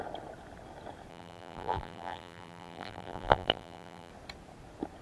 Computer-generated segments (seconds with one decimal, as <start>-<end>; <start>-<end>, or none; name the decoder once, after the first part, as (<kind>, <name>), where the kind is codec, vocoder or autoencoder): 1.1-4.1 (vocoder, BigVGAN v2)

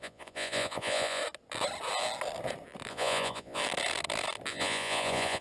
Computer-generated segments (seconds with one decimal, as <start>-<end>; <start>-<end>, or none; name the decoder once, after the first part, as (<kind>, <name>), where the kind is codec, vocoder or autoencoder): 0.0-1.2 (vocoder, Vocos); 2.9-3.6; 4.5-5.4

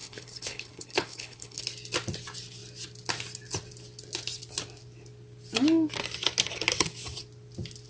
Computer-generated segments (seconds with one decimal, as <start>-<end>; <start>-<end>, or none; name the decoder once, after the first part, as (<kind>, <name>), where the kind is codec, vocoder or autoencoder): 0.0-1.6 (codec, HILCodec)

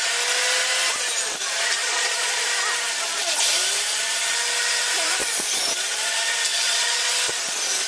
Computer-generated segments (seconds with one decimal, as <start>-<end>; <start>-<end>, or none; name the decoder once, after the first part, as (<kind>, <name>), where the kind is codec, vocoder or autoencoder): 1.8-2.4 (vocoder, Vocos); 5.2-6.1; 6.5-7.1

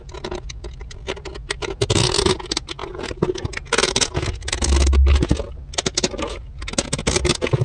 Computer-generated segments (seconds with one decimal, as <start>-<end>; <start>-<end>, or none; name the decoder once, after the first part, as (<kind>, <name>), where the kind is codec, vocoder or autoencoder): none

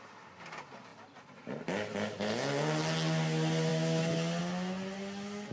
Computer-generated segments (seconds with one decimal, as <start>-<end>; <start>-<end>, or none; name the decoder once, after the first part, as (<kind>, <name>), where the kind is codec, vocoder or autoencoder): none